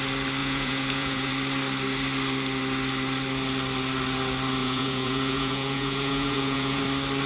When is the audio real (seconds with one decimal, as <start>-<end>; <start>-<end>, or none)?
0.0-0.4; 1.3-4.6; 6.8-7.3